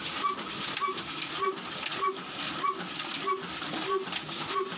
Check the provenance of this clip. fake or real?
real